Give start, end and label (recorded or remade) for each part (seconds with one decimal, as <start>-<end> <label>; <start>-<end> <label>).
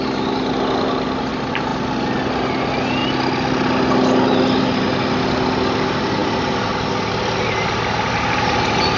0.0-9.0 recorded